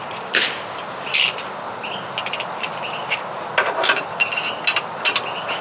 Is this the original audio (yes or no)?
yes